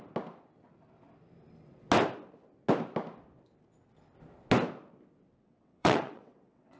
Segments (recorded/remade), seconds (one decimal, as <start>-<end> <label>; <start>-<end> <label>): 0.0-5.4 recorded; 5.4-6.8 remade

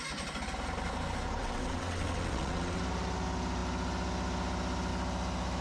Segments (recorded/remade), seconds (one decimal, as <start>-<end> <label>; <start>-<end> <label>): 0.0-1.4 recorded; 1.4-2.8 remade; 2.8-5.6 recorded

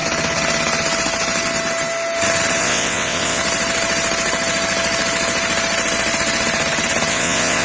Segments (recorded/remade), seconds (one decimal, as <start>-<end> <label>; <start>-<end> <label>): 0.0-2.6 recorded; 2.6-3.4 remade; 3.4-7.1 recorded; 7.1-7.6 remade

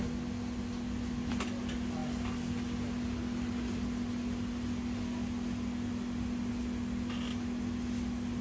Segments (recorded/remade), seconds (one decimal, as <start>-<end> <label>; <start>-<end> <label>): 0.0-8.4 recorded

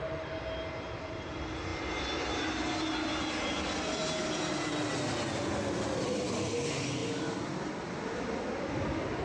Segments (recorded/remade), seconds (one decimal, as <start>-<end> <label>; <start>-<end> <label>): 0.0-9.2 recorded

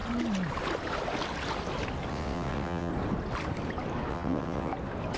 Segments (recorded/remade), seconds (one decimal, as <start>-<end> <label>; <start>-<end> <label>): 0.0-2.1 recorded; 2.1-2.9 remade; 2.9-4.1 recorded; 4.1-4.7 remade; 4.7-5.2 recorded

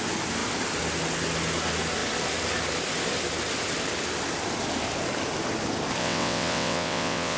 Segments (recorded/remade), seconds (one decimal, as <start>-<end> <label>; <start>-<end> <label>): 0.0-6.0 recorded; 6.0-7.4 remade